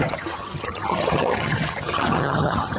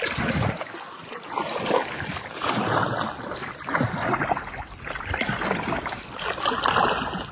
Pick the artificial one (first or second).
first